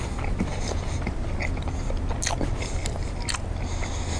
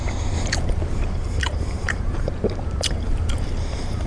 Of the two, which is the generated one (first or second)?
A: second